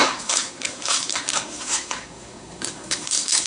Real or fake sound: fake